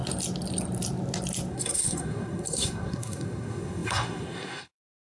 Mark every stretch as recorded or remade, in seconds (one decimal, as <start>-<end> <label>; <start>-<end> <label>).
0.0-1.5 recorded; 1.5-5.1 remade